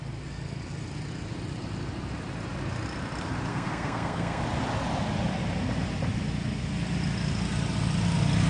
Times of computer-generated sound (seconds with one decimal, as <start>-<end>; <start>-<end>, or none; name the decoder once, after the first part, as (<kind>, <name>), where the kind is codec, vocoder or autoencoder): 3.5-4.4 (codec, SNAC)